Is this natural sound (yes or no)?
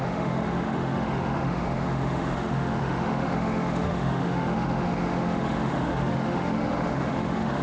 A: no